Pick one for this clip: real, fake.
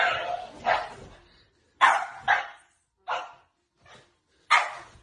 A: real